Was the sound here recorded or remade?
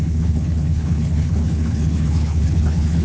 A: remade